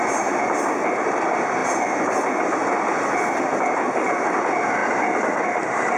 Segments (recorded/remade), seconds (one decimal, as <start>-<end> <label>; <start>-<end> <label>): 0.0-6.0 recorded